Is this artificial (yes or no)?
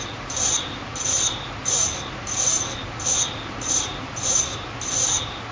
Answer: no